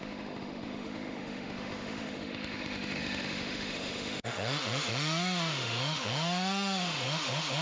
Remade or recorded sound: remade